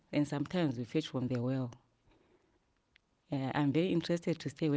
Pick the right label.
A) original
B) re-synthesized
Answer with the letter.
A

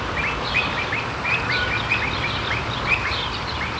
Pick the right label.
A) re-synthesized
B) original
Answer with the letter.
B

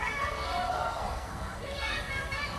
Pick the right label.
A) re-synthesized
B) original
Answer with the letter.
A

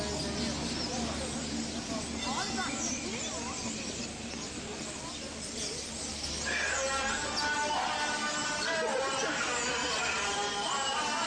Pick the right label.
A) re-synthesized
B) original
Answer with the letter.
B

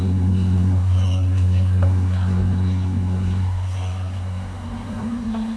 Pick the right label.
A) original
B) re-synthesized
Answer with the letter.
B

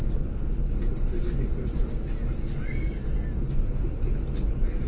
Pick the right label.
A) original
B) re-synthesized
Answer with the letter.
A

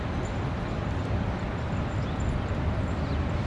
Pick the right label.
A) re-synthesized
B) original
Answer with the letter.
B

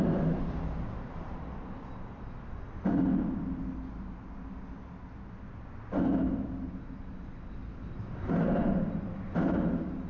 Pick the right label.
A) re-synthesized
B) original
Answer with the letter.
B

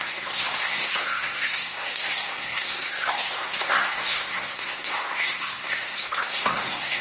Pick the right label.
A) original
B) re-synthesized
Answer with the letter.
B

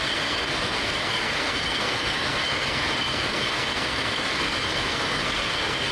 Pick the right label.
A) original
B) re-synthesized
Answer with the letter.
B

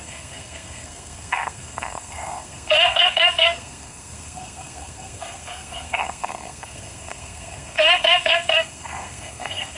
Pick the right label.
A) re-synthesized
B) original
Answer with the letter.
A